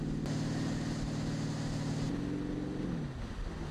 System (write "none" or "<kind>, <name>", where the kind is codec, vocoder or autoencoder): none